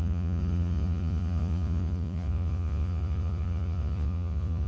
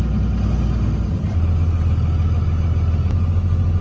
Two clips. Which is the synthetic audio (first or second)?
first